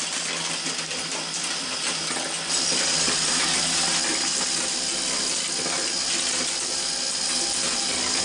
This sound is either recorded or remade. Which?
recorded